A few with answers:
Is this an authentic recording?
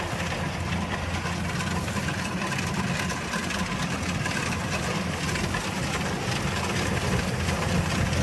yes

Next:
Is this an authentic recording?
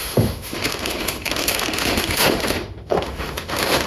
no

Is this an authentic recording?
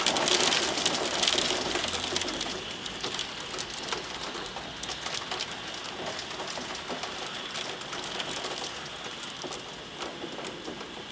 yes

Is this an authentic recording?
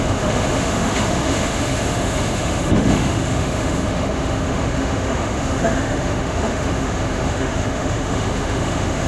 no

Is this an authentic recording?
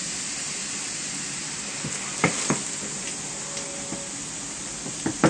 yes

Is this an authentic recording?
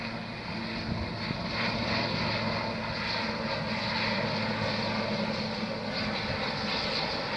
yes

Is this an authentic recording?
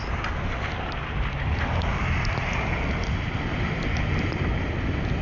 yes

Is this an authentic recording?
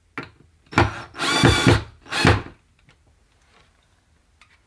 yes